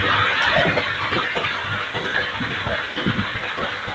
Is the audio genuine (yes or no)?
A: yes